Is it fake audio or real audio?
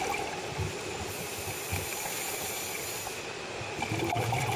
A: real